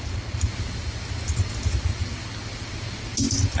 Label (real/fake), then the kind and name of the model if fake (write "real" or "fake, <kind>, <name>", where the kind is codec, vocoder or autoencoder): real